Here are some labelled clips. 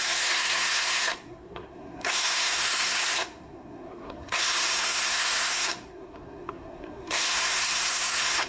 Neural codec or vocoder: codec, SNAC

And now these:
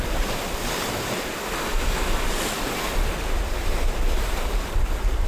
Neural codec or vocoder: none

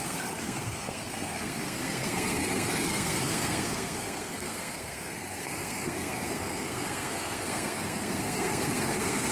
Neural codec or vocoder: codec, SNAC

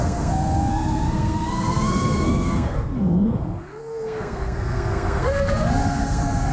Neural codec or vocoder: codec, SNAC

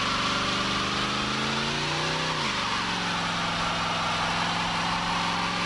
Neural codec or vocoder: none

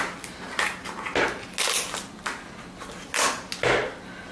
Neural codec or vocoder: none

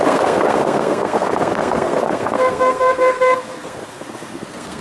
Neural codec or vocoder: codec, SNAC